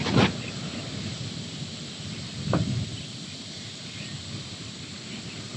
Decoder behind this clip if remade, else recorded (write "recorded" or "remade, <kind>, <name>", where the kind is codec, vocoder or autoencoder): recorded